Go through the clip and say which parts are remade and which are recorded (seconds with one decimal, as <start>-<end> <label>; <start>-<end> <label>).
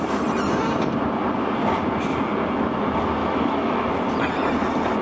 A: 0.0-3.2 recorded; 3.2-3.9 remade; 3.9-5.0 recorded